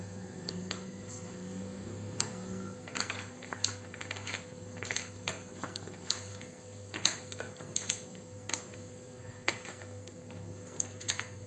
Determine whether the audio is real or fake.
fake